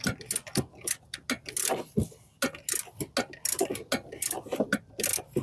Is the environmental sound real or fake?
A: real